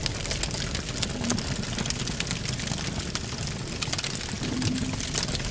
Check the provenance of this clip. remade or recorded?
recorded